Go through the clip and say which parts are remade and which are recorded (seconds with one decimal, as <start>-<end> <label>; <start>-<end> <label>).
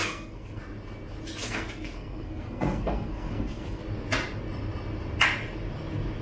0.0-0.6 remade; 0.6-1.4 recorded; 1.4-3.8 remade; 3.8-6.2 recorded